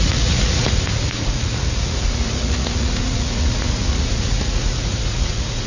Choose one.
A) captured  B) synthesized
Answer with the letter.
B